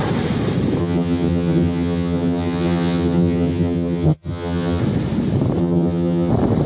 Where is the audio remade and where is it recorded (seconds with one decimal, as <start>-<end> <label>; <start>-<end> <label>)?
0.0-0.8 recorded; 0.8-4.8 remade; 4.8-5.6 recorded; 5.6-6.3 remade; 6.3-6.7 recorded